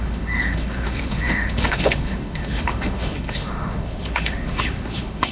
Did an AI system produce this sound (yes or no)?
yes